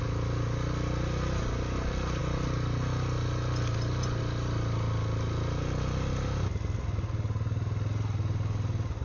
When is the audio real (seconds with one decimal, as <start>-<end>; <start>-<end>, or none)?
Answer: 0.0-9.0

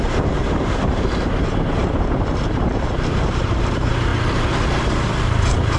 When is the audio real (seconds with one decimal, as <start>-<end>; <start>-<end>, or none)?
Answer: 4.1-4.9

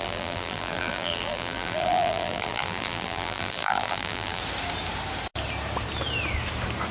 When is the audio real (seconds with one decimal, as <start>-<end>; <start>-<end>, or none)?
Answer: 4.4-6.9

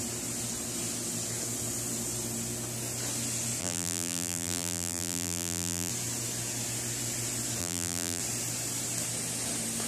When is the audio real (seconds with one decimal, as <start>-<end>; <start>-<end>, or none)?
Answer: 0.0-3.6; 5.9-7.6; 8.2-9.9